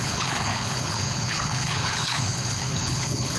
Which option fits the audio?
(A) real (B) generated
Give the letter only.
B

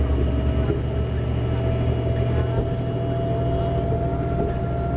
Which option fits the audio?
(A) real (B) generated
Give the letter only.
A